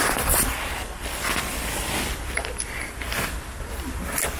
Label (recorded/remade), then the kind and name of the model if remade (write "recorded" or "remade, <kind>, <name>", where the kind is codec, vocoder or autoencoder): remade, vocoder, BigVGAN v2